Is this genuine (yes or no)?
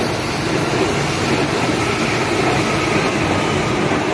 yes